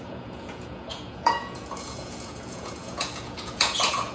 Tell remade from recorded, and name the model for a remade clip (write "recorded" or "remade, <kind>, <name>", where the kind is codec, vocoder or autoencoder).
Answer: remade, vocoder, Vocos